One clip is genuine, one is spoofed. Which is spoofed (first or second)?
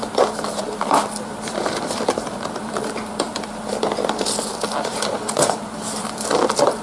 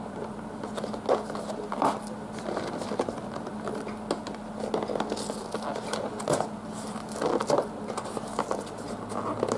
first